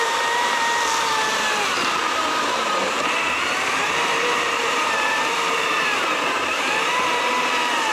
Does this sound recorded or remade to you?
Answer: remade